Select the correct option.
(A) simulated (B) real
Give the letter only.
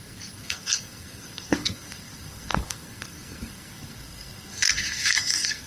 A